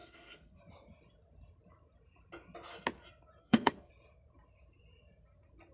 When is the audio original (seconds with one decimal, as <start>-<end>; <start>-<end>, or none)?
0.6-3.4; 3.9-5.7